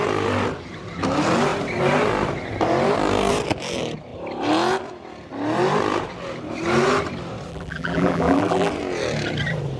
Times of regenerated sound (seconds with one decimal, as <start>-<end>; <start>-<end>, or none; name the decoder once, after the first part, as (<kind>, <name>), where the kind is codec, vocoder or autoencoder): 7.5-8.7 (vocoder, BigVGAN v2)